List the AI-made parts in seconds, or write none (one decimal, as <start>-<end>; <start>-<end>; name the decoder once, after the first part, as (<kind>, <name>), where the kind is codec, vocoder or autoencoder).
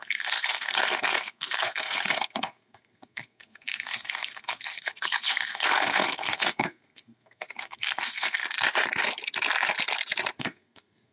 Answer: 0.0-8.4 (codec, SNAC); 10.4-11.1